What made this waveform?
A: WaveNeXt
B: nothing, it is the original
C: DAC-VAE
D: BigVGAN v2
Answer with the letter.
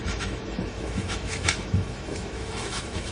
C